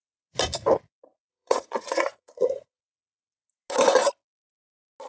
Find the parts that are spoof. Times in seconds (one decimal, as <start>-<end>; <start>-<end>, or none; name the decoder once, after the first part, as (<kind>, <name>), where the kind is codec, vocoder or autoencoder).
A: 1.3-2.8 (vocoder, Vocos)